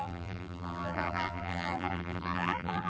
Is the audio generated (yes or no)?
yes